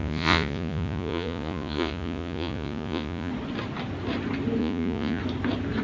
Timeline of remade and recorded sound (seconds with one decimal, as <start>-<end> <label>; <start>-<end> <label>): 0.0-3.3 remade; 3.3-4.6 recorded; 4.6-5.2 remade; 5.2-5.8 recorded